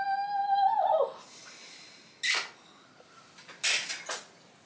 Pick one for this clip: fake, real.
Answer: real